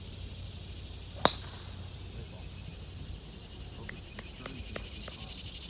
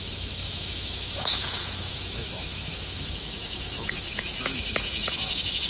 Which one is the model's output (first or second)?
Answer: second